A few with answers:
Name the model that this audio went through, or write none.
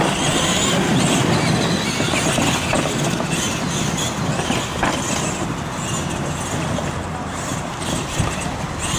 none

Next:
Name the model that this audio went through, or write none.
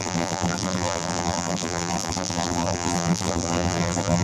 vocoder, BigVGAN v2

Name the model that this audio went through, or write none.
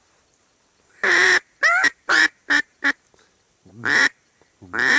vocoder, BigVGAN v2